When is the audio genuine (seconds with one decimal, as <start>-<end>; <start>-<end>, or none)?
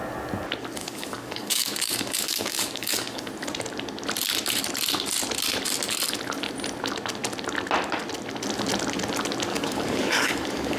0.0-0.8; 3.3-9.5